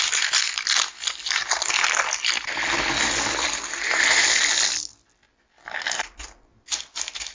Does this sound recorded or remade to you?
recorded